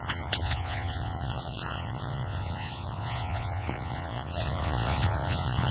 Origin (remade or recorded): remade